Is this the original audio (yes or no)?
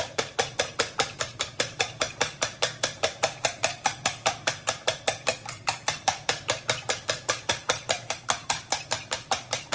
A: no